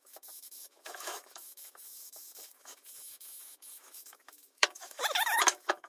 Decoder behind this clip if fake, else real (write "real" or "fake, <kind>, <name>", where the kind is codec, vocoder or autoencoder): fake, autoencoder, DAC-VAE